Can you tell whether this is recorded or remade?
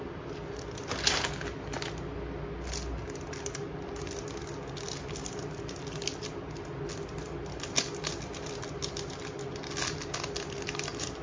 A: recorded